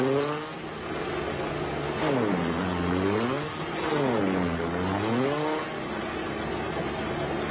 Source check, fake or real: real